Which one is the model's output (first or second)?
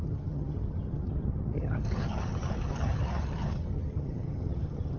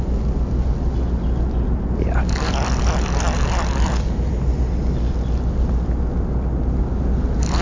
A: first